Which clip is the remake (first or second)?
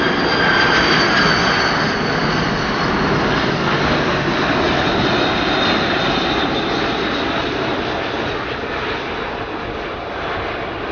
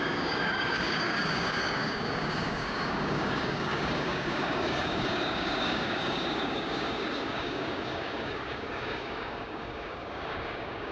second